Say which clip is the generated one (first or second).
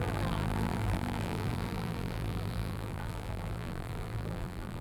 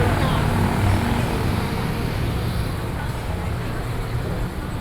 first